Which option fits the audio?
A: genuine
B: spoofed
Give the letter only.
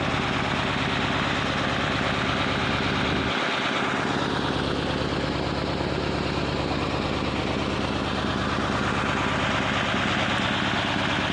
A